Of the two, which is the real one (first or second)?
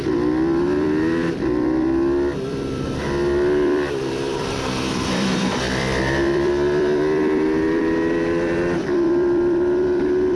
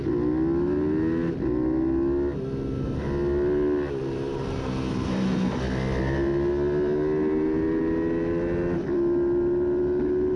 second